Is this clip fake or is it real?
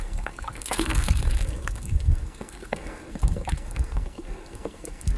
fake